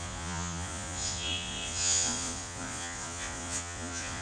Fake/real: fake